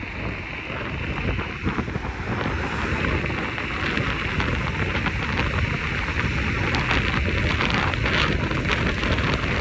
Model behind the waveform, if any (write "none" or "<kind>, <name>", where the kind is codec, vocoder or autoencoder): none